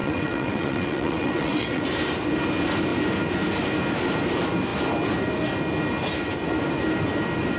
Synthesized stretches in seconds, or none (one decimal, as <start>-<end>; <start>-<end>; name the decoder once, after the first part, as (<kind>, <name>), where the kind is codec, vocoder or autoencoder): 0.0-1.8 (vocoder, WaveNeXt)